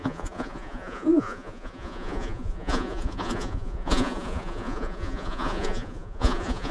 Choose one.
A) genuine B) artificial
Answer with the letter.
B